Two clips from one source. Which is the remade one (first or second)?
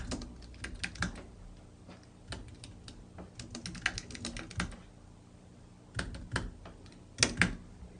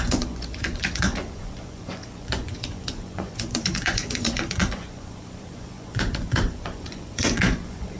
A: second